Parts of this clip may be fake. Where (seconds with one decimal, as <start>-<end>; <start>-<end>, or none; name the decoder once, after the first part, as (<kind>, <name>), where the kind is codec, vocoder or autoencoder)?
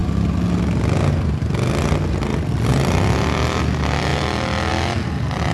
none